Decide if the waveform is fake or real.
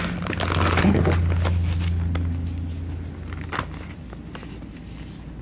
real